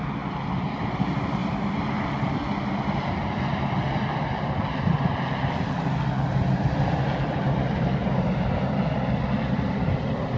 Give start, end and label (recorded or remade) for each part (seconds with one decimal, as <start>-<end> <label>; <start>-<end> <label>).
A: 0.0-10.4 recorded